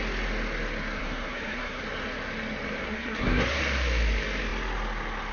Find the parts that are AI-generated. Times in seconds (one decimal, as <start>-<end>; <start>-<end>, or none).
1.0-1.8; 2.8-3.6

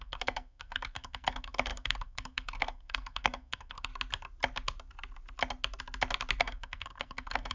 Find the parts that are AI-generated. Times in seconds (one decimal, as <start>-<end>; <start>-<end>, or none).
0.0-3.9; 6.4-7.5

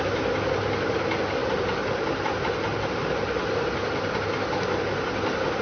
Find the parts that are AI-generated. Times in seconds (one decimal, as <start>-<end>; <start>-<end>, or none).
none

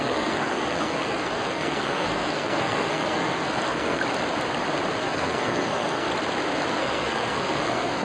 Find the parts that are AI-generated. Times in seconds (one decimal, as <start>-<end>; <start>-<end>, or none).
0.0-4.0; 5.0-6.1; 6.7-8.0

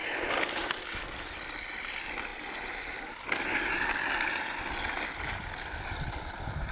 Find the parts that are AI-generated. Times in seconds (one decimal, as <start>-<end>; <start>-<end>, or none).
none

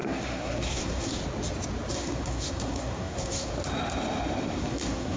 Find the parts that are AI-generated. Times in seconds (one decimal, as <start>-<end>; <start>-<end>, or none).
0.0-1.2; 1.9-3.5; 4.6-5.2

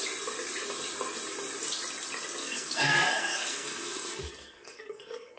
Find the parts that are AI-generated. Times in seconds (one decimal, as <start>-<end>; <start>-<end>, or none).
2.4-5.4